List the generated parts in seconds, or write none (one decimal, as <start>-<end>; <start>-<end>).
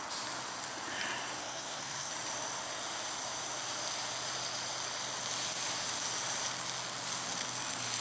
1.4-2.1